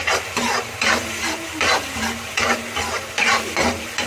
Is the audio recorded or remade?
remade